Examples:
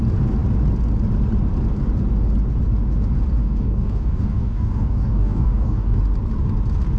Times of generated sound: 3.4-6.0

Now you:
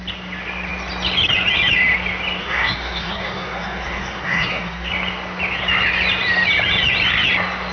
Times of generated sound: 2.4-4.9

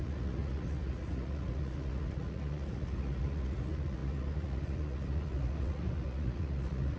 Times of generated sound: 0.0-7.0